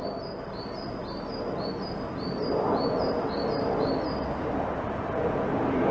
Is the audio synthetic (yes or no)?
no